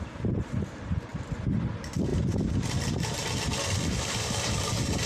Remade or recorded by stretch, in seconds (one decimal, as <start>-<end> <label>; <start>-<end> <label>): 0.0-1.1 remade; 1.1-1.7 recorded; 1.7-2.1 remade; 2.1-5.1 recorded